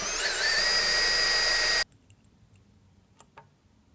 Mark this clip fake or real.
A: real